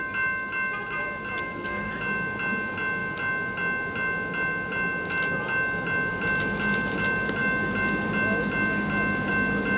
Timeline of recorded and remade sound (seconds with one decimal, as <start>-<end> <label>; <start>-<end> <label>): 0.0-1.4 recorded; 1.4-1.9 remade; 1.9-9.8 recorded